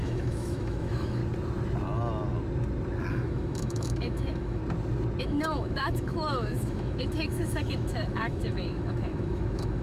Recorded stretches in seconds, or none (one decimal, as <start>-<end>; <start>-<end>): 1.2-3.1; 4.6-5.2